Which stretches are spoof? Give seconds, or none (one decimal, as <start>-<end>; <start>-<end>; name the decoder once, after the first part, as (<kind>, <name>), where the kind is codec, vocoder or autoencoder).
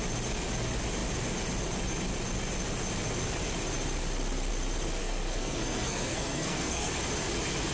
5.0-6.9 (codec, SNAC)